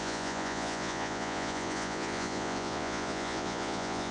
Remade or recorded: remade